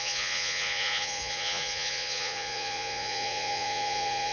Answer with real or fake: fake